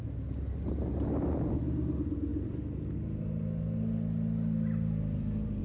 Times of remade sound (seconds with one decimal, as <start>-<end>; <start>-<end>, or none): none